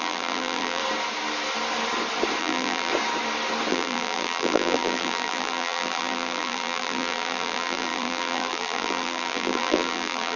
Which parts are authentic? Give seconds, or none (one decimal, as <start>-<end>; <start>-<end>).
0.8-2.4; 2.9-3.7